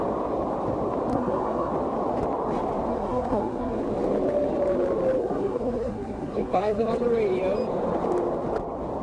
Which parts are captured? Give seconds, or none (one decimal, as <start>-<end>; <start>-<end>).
0.0-1.1; 1.7-2.9; 3.8-5.2; 6.9-9.0